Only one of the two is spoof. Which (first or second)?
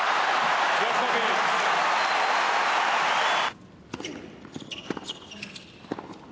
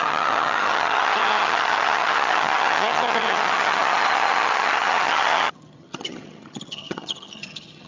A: second